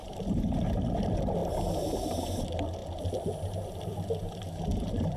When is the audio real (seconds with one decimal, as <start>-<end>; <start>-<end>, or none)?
0.6-4.2